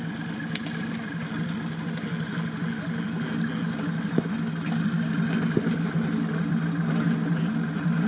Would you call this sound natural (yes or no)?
yes